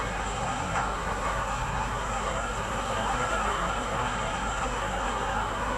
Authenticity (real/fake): fake